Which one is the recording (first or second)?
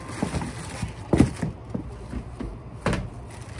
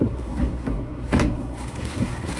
first